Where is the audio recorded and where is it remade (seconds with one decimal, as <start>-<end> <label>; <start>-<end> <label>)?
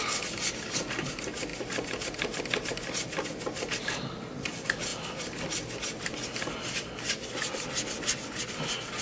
0.0-9.0 recorded